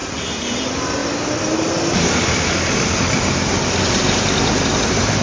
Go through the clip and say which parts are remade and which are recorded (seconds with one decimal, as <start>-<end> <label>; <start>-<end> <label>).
0.0-0.6 recorded; 0.6-1.0 remade; 1.0-3.6 recorded; 3.6-5.2 remade